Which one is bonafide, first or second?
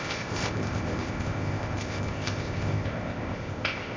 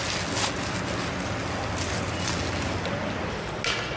second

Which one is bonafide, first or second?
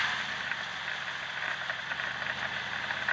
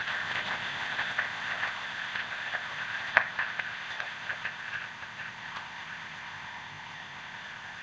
first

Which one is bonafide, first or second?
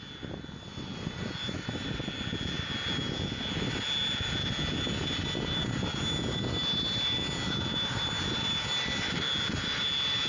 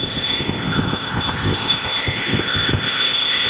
first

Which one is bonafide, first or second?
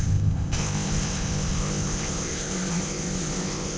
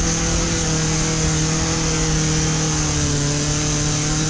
second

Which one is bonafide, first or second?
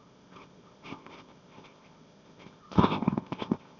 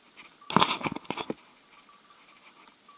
second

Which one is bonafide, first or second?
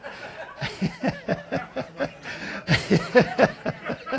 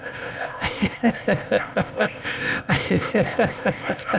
first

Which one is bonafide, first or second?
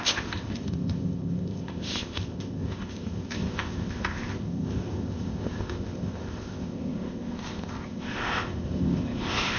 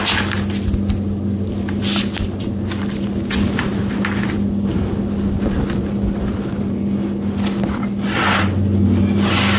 second